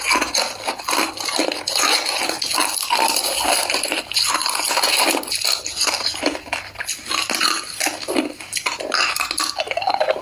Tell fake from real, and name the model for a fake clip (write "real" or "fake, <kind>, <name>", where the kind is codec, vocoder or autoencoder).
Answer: real